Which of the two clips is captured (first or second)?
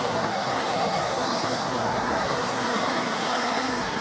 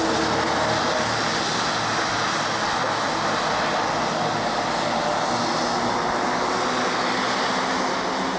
second